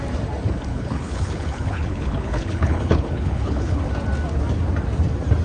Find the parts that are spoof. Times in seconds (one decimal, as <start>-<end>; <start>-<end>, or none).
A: 0.7-3.8